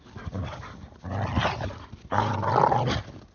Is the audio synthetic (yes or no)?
no